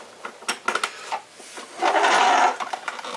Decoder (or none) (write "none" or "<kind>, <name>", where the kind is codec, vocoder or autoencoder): none